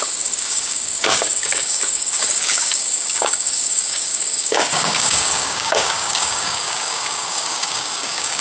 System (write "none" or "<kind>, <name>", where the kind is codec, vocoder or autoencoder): codec, DAC